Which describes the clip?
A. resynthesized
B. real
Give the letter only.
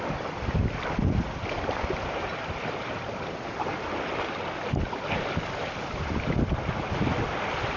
B